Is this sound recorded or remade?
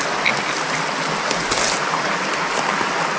recorded